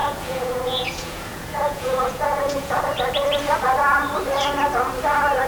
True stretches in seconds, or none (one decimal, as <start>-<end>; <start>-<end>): 2.8-5.5